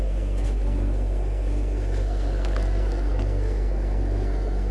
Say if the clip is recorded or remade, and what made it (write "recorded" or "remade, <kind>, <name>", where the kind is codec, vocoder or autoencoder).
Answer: remade, codec, SNAC